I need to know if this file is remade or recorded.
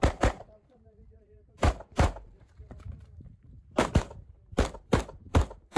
remade